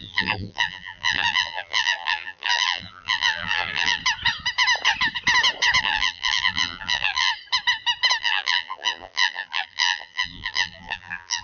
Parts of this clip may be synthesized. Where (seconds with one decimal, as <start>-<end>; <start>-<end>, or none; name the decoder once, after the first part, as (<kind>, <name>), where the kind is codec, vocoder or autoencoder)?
0.0-4.0 (vocoder, BigVGAN v2); 5.8-7.3; 8.2-11.4